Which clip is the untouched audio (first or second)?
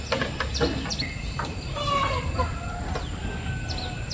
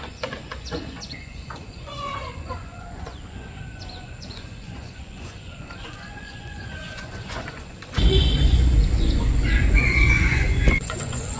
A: first